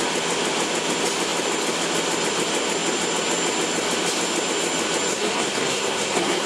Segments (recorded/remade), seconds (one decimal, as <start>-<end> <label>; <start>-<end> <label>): 0.0-5.1 recorded; 5.1-6.5 remade